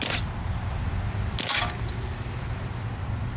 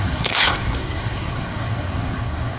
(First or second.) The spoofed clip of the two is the second